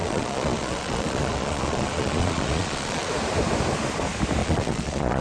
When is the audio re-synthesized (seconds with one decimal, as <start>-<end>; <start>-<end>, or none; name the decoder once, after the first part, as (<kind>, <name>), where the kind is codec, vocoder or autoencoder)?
0.0-3.1 (vocoder, Vocos); 4.4-5.2